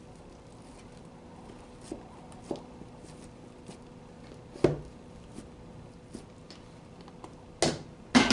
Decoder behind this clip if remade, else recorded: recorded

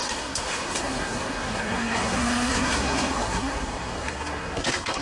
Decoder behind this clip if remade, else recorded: remade, codec, SNAC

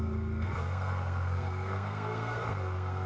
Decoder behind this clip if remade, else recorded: remade, codec, SNAC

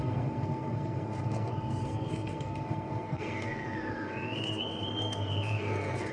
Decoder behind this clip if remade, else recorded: remade, codec, SNAC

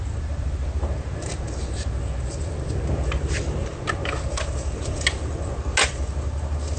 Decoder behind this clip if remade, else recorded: recorded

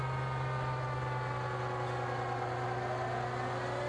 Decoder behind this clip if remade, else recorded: recorded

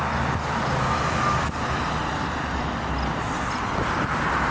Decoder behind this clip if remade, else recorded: recorded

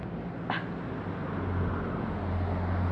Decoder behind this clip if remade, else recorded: recorded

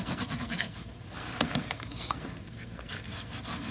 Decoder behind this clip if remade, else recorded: remade, codec, SNAC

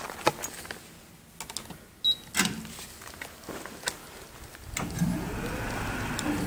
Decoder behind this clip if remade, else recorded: recorded